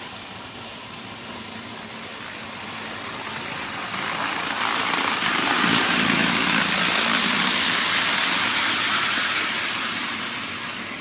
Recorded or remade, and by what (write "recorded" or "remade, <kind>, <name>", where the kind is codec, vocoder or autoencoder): recorded